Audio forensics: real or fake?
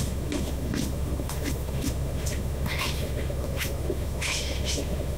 fake